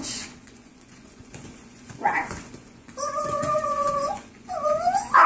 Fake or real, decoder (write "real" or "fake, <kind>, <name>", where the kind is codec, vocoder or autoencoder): fake, vocoder, Vocos